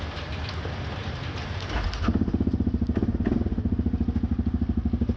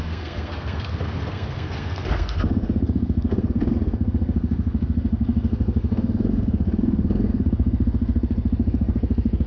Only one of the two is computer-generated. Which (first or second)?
second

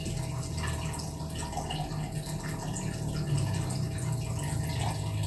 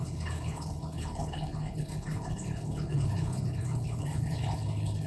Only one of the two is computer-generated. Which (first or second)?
second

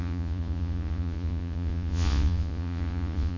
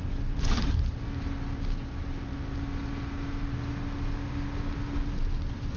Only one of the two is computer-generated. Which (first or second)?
first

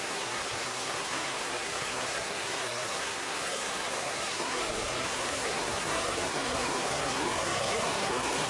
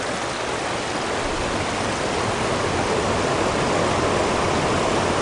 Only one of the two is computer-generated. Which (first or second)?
first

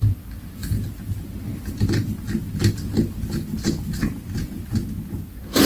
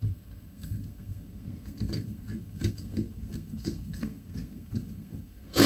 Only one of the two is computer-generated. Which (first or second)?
second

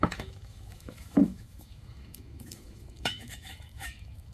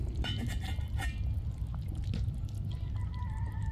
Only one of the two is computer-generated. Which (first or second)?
first